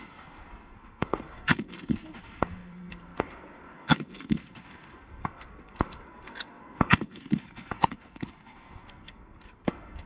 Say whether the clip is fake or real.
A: fake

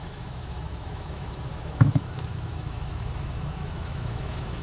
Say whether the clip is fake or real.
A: fake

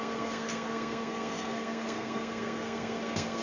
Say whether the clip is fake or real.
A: fake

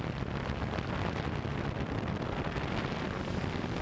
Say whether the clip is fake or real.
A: real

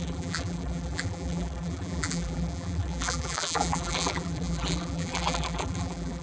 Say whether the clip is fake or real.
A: fake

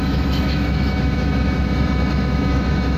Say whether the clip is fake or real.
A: fake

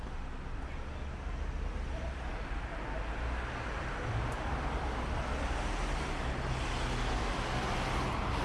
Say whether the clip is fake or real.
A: real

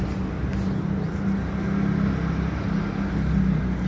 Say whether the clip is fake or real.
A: real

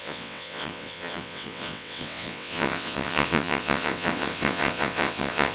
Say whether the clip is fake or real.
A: fake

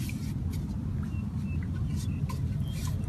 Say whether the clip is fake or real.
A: real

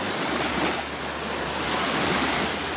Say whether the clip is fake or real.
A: real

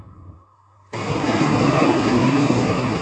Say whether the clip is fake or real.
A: fake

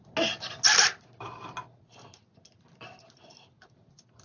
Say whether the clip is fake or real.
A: real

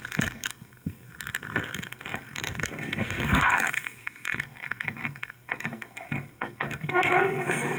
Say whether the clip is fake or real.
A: fake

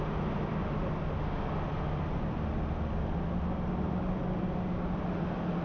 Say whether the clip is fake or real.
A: real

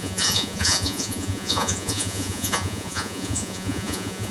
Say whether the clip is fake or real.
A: fake